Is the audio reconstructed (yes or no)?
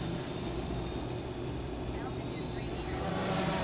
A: yes